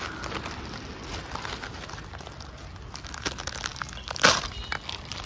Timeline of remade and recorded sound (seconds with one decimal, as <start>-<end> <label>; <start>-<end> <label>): 0.0-5.3 recorded